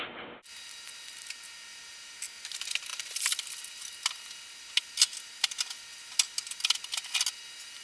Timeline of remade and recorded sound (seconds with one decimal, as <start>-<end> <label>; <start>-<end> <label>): 0.0-7.8 recorded